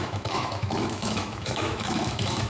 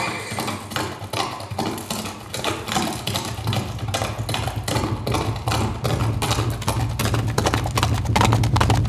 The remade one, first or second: first